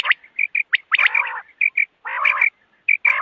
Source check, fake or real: real